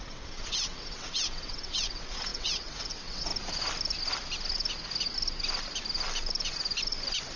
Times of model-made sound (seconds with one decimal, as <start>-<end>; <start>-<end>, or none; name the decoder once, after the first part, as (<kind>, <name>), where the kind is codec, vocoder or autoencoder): 0.0-3.3 (vocoder, WaveNeXt)